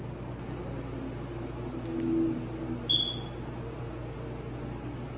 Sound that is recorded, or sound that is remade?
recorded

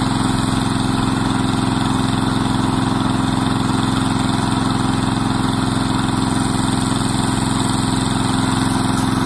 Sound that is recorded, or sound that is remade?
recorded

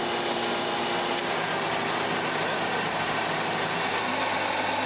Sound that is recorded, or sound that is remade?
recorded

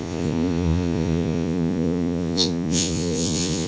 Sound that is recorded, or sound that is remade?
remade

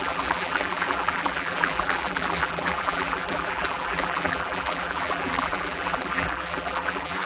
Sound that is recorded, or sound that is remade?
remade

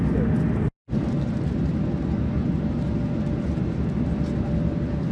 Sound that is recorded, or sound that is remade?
recorded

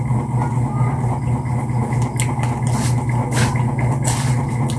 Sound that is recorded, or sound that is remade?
recorded